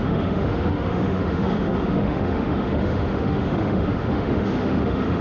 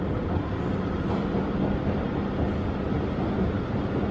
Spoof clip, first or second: first